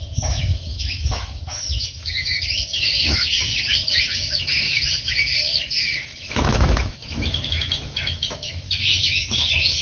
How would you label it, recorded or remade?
remade